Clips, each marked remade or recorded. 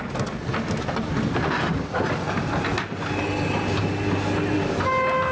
recorded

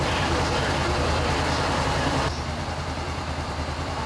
remade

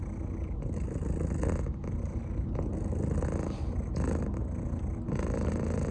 recorded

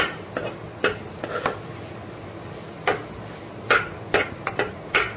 recorded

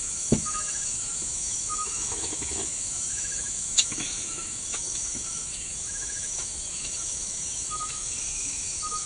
remade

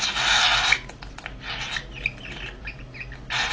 recorded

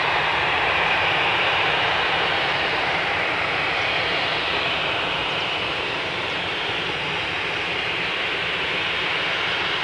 remade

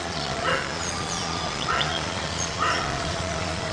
remade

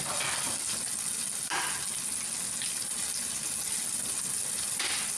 recorded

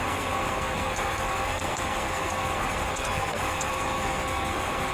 remade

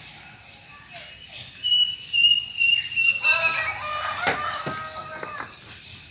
recorded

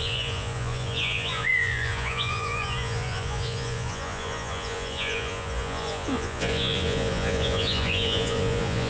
remade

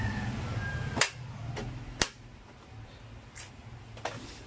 recorded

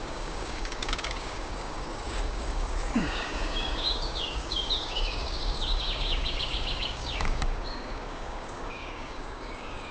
remade